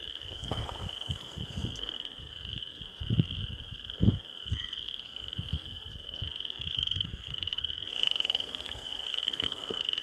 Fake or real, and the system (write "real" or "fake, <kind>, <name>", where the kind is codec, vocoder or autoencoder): fake, codec, SNAC